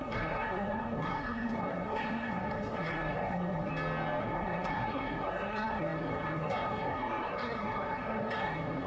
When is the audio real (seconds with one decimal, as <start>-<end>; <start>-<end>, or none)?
3.7-4.2